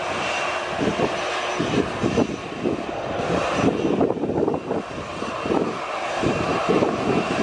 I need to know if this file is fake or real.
fake